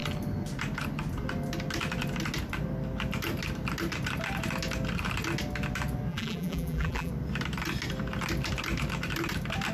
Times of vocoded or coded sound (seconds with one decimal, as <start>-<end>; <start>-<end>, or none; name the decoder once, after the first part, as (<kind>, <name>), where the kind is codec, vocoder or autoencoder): 6.1-7.1 (vocoder, BigVGAN v2)